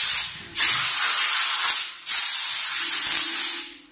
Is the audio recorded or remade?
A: recorded